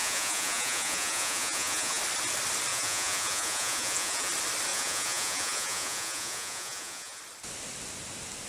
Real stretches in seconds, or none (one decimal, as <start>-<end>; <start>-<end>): 2.0-2.7; 4.3-4.7; 7.2-8.5